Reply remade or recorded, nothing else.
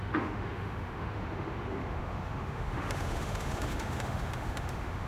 remade